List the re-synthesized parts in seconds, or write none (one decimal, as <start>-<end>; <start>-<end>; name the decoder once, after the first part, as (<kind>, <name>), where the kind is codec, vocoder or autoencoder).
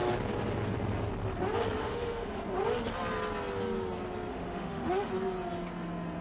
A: 1.8-2.4 (autoencoder, DAC-VAE); 4.3-5.1